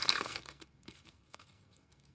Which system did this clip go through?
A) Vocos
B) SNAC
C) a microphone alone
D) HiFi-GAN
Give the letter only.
B